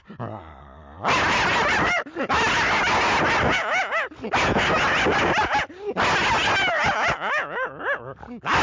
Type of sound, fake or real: real